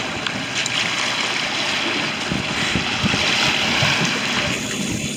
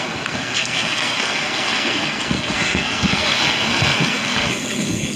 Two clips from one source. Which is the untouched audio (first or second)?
first